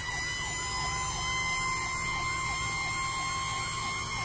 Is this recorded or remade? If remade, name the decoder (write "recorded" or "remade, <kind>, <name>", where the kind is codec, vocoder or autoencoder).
recorded